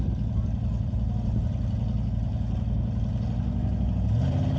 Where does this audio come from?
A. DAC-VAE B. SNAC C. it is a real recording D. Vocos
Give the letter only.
C